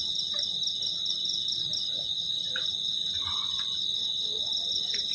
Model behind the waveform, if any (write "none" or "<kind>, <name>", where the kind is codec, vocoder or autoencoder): vocoder, BigVGAN v2